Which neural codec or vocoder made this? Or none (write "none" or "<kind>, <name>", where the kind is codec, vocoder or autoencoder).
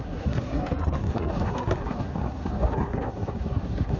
codec, SNAC